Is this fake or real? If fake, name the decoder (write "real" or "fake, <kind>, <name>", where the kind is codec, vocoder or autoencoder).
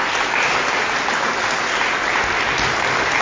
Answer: real